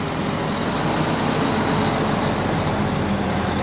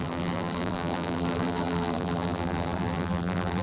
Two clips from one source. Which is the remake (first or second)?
second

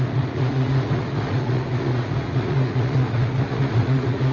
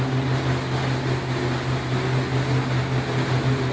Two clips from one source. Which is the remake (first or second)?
first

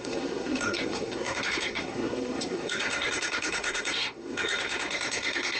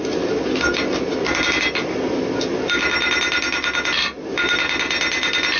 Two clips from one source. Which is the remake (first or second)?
first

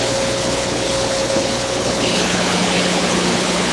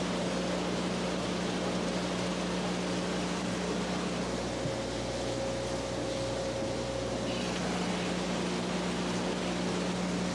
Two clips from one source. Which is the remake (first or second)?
first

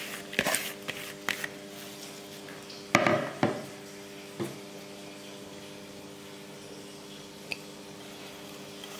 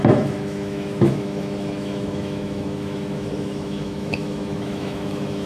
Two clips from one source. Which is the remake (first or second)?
second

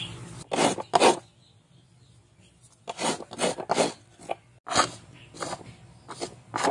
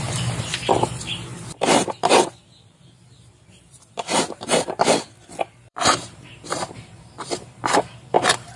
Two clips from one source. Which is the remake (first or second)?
second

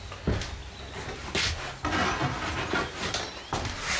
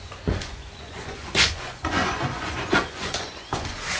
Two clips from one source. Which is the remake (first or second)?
second